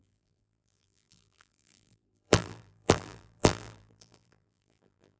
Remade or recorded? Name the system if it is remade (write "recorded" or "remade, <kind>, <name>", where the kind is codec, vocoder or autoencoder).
remade, vocoder, BigVGAN v2